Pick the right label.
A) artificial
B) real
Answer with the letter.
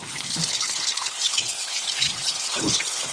A